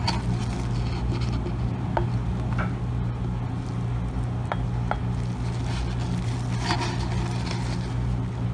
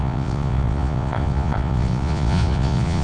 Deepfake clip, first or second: second